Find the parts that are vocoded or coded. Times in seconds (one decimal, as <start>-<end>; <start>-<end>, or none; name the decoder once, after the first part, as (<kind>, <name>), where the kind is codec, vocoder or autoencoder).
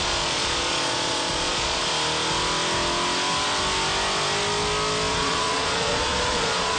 0.0-1.8 (vocoder, Vocos); 5.1-6.8